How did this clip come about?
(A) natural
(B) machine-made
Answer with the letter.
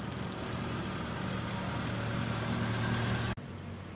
A